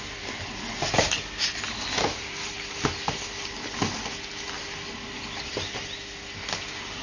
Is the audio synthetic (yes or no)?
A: no